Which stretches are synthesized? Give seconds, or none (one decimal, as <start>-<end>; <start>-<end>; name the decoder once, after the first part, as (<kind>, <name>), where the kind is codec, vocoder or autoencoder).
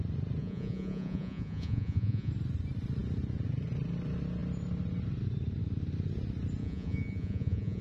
0.4-2.3 (vocoder, Vocos); 6.6-7.8